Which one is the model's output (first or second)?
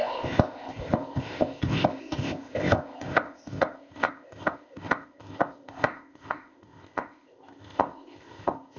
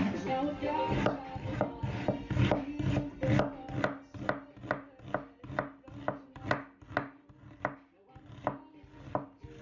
first